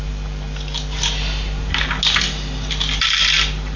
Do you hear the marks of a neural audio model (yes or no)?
no